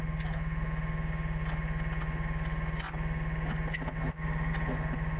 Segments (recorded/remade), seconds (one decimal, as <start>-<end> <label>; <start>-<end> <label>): 0.0-5.2 recorded